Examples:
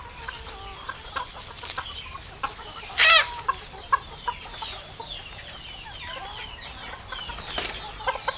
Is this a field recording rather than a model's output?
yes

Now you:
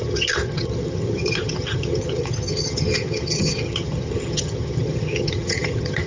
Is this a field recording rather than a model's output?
no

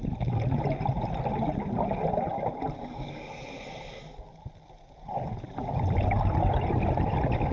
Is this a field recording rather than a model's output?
yes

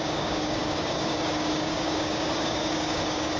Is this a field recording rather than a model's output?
no